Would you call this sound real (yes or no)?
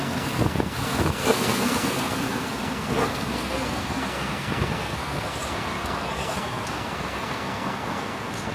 no